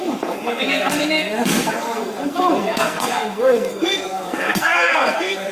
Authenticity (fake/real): fake